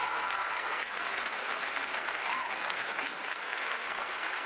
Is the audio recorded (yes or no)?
no